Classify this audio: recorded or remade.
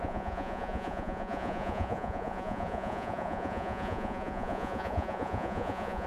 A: remade